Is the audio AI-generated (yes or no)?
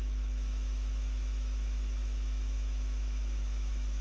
yes